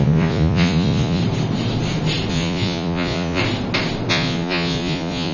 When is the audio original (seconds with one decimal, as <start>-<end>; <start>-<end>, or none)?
1.2-2.3; 3.4-4.1

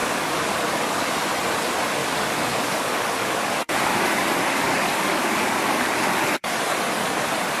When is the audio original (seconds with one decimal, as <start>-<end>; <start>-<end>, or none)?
1.1-2.0; 6.6-7.6